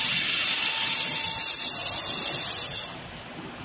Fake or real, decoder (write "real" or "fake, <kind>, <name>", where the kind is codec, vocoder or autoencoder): real